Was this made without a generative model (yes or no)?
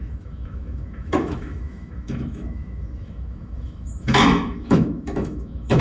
no